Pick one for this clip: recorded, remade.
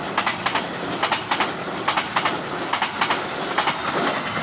recorded